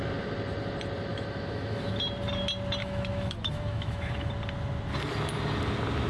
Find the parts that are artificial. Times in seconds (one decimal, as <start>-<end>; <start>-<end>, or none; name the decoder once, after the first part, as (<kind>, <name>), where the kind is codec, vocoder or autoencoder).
1.1-1.9 (autoencoder, DAC-VAE); 2.8-4.3